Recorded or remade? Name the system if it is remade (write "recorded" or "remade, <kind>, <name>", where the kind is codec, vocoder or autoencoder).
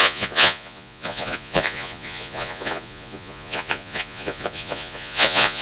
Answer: remade, vocoder, Vocos